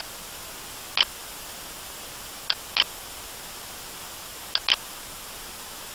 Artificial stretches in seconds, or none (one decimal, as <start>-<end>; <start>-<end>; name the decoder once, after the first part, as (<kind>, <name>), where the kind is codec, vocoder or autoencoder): none